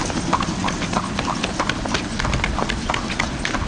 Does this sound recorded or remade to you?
recorded